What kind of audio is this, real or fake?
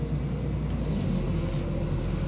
real